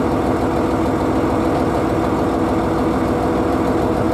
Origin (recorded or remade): recorded